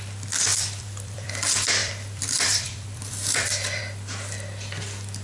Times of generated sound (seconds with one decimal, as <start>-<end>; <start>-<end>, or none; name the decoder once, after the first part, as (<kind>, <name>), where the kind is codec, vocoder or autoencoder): 0.5-1.3 (vocoder, BigVGAN v2); 1.8-3.8